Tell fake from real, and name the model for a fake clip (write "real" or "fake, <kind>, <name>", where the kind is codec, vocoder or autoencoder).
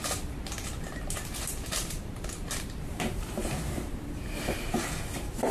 fake, vocoder, BigVGAN v2